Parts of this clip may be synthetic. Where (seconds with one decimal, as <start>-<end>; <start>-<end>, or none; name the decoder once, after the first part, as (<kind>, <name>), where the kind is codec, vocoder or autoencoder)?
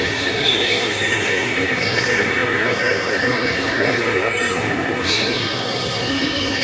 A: 0.0-6.6 (codec, SNAC)